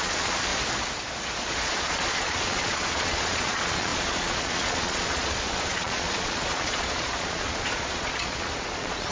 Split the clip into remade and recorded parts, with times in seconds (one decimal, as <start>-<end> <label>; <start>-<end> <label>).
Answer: 0.0-0.5 remade; 0.5-1.4 recorded; 1.4-9.1 remade